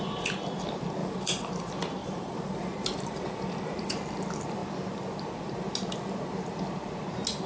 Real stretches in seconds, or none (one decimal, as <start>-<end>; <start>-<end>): 0.0-1.0; 1.5-2.0; 3.9-7.5